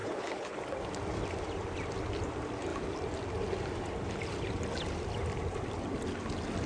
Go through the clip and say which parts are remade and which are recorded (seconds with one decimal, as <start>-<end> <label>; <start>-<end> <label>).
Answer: 0.0-0.6 remade; 0.6-6.7 recorded